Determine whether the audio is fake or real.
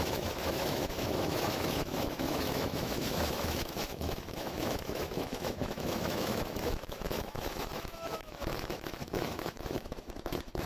fake